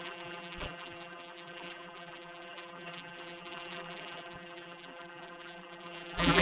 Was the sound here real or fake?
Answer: fake